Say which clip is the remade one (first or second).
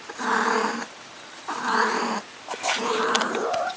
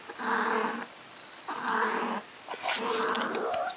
first